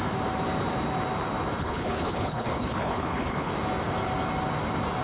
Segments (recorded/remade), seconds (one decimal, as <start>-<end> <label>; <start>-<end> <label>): 0.0-1.6 recorded; 1.6-3.5 remade; 3.5-5.0 recorded